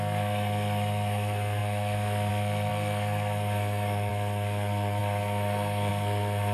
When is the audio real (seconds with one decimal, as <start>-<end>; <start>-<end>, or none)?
none